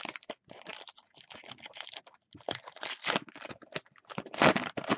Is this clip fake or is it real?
real